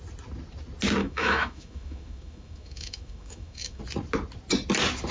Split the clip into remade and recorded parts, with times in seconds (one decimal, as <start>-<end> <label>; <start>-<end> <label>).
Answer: 0.0-1.0 recorded; 1.0-3.8 remade; 3.8-5.1 recorded